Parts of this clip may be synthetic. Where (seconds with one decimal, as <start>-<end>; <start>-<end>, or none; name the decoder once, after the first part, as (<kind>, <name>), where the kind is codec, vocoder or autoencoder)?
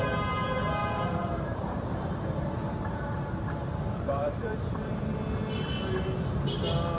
0.8-5.0 (vocoder, BigVGAN v2)